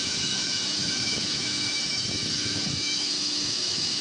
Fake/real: fake